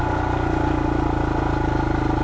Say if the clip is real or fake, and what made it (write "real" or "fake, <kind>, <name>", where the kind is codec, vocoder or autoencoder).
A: real